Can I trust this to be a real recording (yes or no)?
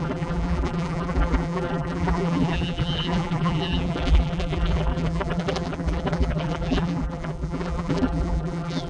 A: no